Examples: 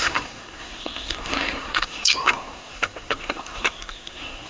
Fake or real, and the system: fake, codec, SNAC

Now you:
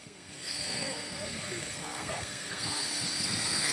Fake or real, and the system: fake, codec, SNAC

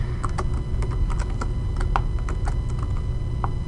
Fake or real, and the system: real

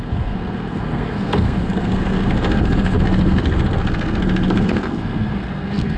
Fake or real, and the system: fake, codec, SNAC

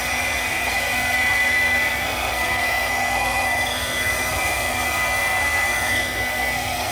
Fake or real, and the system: fake, codec, SNAC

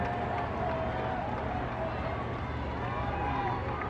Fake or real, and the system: real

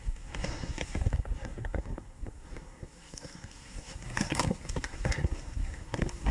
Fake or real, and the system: fake, codec, SNAC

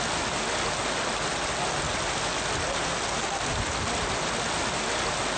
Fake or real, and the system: real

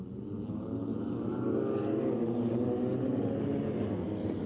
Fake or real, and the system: real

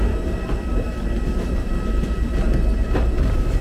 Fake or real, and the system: real